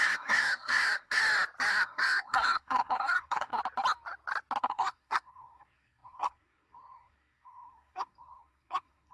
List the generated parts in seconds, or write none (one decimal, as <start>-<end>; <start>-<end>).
0.0-1.2; 1.7-3.6; 4.6-9.1